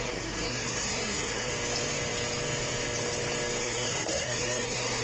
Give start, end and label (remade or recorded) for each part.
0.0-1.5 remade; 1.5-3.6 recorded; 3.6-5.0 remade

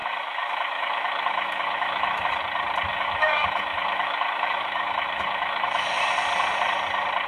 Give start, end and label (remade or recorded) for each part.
0.0-2.4 remade; 2.4-2.9 recorded; 2.9-6.0 remade; 6.0-7.3 recorded

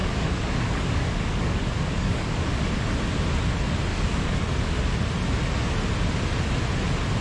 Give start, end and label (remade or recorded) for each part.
0.0-2.7 remade; 2.7-3.9 recorded; 3.9-4.4 remade; 4.4-7.2 recorded

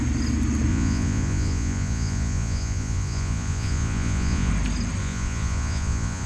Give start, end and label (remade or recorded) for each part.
0.0-0.7 recorded; 0.7-4.5 remade; 4.5-5.0 recorded; 5.0-6.3 remade

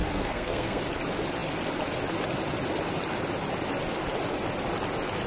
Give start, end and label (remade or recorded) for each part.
0.0-0.8 remade; 0.8-5.3 recorded

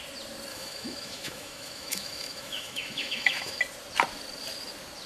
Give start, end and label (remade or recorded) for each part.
0.0-0.5 recorded; 0.5-3.6 remade; 3.6-5.1 recorded

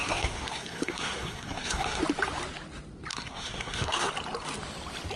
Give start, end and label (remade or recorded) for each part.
0.0-2.0 remade; 2.0-3.1 recorded; 3.1-4.1 remade; 4.1-5.2 recorded

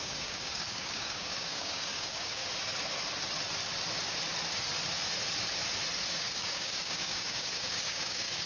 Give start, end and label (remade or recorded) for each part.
0.0-2.4 remade; 2.4-6.1 recorded; 6.1-8.5 remade